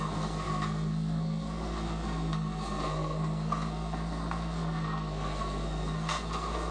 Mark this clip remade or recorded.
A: remade